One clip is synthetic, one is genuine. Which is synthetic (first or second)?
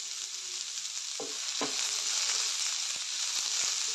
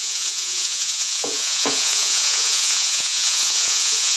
second